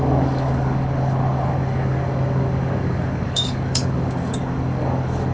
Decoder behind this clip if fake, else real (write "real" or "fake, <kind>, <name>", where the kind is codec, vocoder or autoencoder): fake, codec, DAC